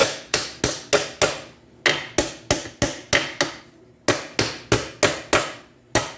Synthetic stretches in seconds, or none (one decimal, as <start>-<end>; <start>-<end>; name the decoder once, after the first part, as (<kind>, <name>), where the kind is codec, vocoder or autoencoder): 0.0-0.6 (autoencoder, DAC-VAE)

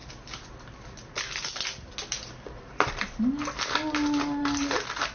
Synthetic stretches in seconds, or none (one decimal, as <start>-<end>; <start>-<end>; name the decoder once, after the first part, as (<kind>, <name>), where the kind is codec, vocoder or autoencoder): none

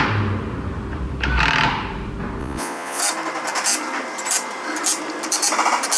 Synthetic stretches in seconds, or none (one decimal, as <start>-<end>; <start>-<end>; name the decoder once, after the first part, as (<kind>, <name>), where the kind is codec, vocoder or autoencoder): 2.4-3.0 (vocoder, Vocos)

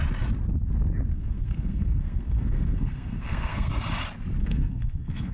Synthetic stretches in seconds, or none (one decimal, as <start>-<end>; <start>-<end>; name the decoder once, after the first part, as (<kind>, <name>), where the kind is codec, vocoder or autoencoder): 1.1-3.7 (codec, SNAC); 4.4-5.3

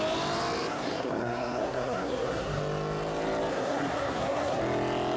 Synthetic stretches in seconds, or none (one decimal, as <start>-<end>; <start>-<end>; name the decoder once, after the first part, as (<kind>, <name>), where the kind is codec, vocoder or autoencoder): 0.7-2.6 (codec, SNAC); 3.5-4.6